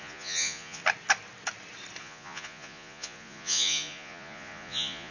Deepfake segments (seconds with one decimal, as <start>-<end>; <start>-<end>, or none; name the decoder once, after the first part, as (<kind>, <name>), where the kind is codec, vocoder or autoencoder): 0.0-0.8 (vocoder, Vocos); 2.0-5.1